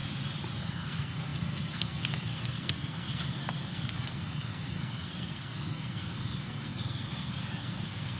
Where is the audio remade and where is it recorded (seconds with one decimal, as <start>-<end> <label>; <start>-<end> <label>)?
0.0-0.6 recorded; 0.6-8.2 remade